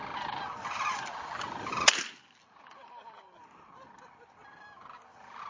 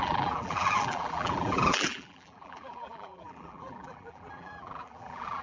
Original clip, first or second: first